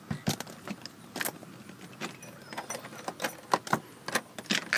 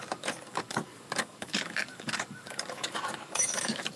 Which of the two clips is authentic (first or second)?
first